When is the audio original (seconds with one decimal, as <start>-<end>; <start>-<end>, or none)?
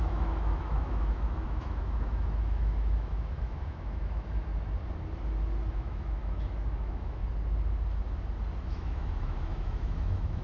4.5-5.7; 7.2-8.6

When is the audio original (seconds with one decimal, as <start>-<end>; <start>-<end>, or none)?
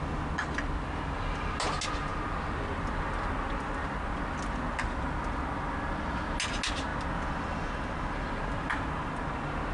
0.0-9.7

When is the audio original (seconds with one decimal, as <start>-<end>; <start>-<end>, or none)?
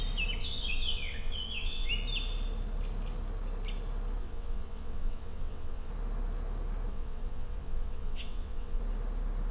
0.0-0.4; 1.9-4.2; 5.9-6.9; 8.8-9.5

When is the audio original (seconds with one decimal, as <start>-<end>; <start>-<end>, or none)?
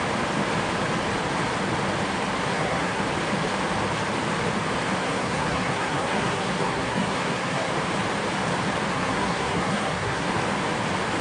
0.0-2.4; 3.0-5.0; 7.7-8.9; 10.3-11.2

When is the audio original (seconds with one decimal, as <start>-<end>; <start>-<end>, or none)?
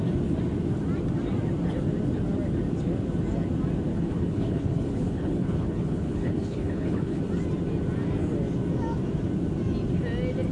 0.0-3.9; 7.2-10.5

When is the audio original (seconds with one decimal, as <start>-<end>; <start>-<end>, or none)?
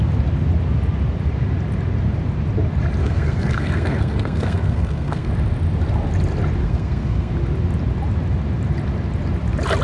0.0-3.0; 5.3-6.6; 7.3-9.8